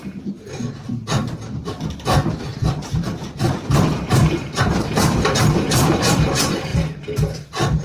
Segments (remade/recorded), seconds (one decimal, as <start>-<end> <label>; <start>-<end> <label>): 0.0-7.8 remade